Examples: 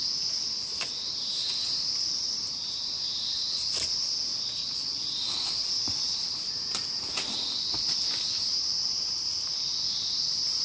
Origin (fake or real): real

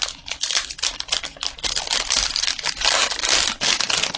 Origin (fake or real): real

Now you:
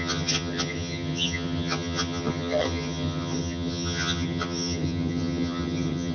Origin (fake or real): fake